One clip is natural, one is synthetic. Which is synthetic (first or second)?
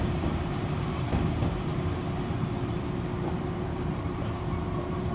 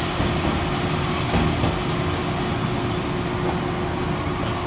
first